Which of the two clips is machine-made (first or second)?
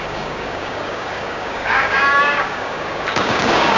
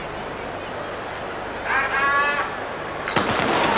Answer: first